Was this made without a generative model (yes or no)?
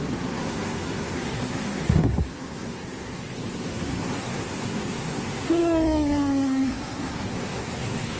no